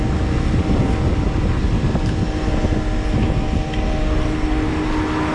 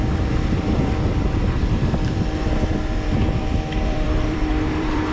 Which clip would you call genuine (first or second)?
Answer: first